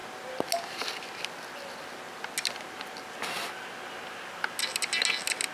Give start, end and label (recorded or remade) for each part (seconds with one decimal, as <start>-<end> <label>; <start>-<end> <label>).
0.0-5.5 recorded